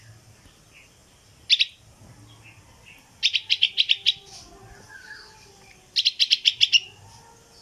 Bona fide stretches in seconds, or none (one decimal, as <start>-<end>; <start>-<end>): 1.0-3.2